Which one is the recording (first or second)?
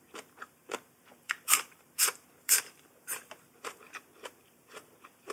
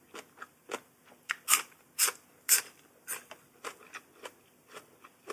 second